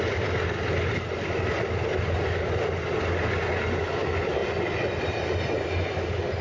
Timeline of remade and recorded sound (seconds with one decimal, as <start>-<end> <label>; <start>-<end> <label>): 0.0-6.4 recorded